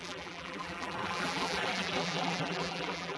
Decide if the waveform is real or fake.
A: fake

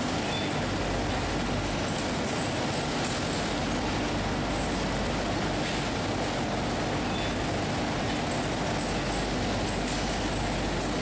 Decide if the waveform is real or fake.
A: real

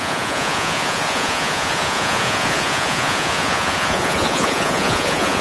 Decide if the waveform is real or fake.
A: fake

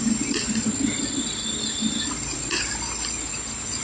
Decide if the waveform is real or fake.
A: real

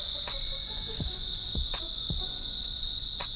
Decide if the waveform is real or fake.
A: fake